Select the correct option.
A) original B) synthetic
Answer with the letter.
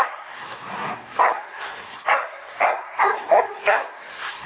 B